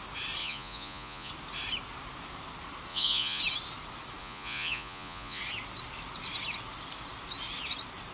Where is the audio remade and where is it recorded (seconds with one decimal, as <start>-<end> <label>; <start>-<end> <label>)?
0.0-0.4 recorded; 0.4-1.3 remade; 1.3-2.9 recorded; 2.9-3.4 remade; 3.4-4.2 recorded; 4.2-5.4 remade; 5.4-8.1 recorded